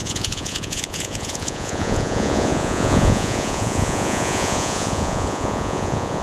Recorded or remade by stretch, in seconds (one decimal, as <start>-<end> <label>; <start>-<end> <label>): 0.0-6.2 remade